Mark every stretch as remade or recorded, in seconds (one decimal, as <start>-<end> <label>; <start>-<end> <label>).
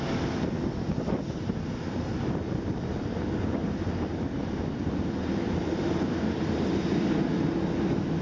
0.0-8.2 recorded